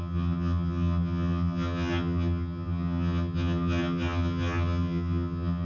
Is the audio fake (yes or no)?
yes